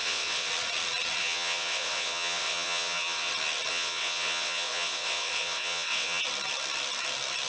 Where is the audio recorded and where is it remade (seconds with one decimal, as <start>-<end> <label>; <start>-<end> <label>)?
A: 0.0-0.5 remade; 0.5-1.2 recorded; 1.2-3.3 remade; 3.3-3.7 recorded; 3.7-6.2 remade; 6.2-7.5 recorded